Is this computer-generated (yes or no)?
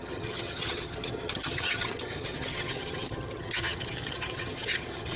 yes